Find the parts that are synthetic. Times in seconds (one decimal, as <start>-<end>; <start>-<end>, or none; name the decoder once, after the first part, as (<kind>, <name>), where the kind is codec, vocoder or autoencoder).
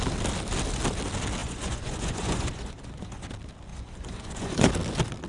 1.4-3.3 (vocoder, Vocos); 3.7-4.7